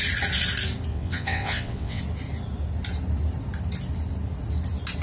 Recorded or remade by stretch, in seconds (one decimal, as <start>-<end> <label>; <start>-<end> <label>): 0.0-0.9 recorded; 0.9-2.0 remade; 2.0-5.0 recorded